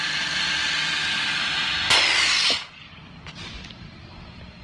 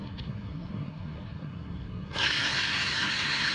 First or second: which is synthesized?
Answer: second